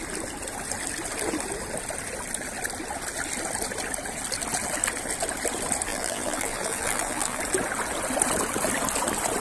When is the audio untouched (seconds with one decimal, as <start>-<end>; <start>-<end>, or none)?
0.0-5.9; 7.4-9.4